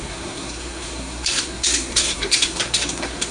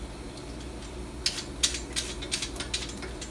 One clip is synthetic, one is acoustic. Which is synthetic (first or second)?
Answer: first